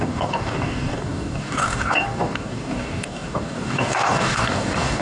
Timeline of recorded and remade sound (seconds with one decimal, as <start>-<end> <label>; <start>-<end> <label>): 0.0-5.0 remade